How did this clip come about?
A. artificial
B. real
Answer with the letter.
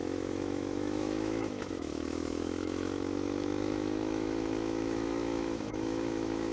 A